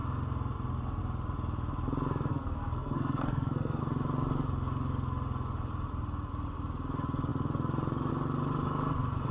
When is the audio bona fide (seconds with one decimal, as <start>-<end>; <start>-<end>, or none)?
0.0-2.3; 3.8-9.3